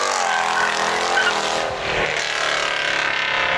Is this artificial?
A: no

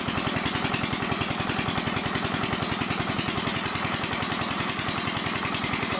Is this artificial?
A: no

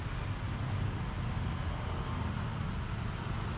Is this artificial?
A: no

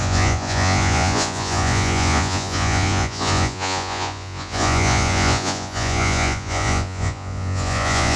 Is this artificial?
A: yes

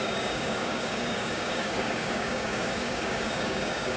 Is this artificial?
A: yes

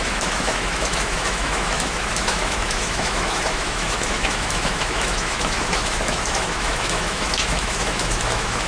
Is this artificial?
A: yes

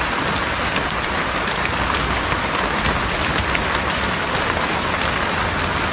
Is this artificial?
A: no